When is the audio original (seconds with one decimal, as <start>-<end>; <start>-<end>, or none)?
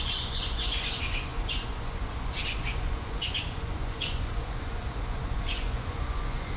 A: none